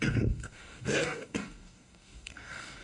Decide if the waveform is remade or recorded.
remade